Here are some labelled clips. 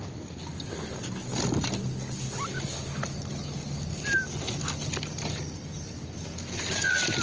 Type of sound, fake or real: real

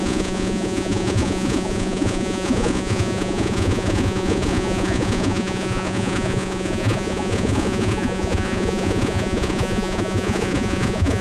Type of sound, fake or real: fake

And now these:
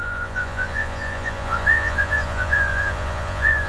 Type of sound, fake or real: fake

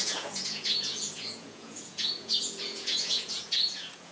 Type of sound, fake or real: fake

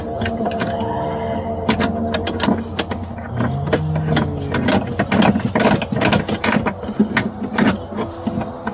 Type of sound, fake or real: real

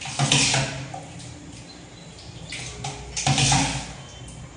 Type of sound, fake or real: real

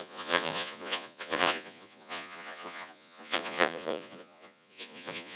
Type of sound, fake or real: fake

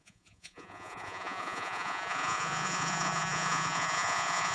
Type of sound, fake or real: fake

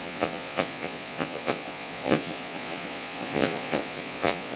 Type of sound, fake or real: fake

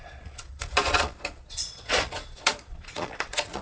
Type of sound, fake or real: fake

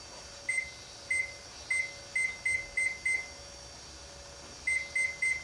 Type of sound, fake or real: real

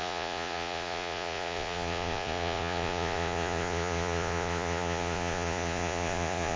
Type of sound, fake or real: fake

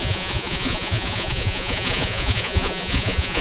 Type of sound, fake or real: fake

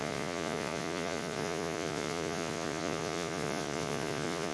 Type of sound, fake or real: fake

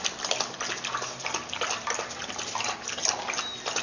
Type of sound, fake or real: real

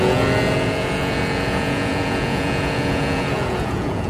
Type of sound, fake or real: fake